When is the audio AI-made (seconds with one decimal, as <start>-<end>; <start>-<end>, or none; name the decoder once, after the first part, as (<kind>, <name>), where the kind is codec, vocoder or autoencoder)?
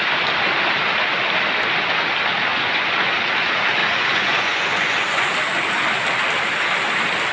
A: 2.5-3.1 (vocoder, Vocos); 3.8-5.3